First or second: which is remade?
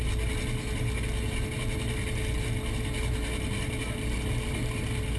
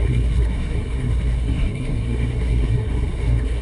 second